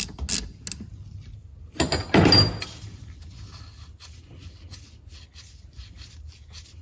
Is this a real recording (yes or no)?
yes